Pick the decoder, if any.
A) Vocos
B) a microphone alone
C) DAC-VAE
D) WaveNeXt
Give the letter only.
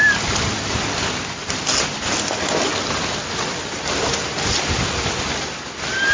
B